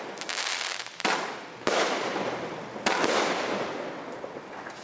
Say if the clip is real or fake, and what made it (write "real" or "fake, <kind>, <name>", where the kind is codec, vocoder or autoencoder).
real